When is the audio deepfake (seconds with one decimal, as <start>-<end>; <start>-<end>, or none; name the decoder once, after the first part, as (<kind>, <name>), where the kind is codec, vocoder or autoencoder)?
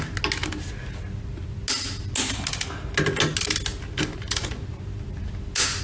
none